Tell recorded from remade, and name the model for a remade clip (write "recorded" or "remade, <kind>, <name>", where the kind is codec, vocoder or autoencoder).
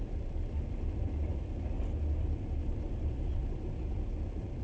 recorded